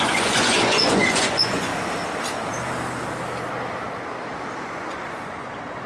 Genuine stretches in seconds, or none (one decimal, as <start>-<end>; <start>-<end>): 1.7-4.6